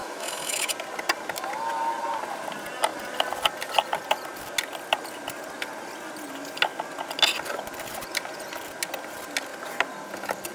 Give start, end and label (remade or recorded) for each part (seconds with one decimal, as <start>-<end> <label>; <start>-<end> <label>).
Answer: 0.0-0.7 remade; 0.7-10.5 recorded